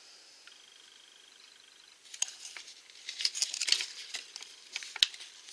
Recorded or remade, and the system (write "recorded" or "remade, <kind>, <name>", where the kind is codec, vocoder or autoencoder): recorded